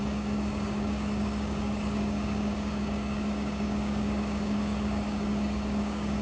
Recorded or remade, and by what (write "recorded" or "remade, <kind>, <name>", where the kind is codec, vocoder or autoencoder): remade, codec, DAC